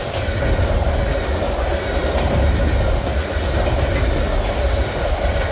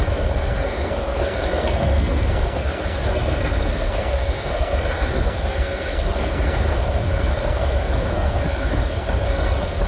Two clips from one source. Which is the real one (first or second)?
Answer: first